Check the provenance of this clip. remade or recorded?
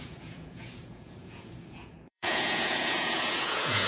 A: remade